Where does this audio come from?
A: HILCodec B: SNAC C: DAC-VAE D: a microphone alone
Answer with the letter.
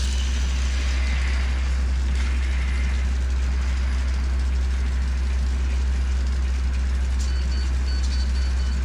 D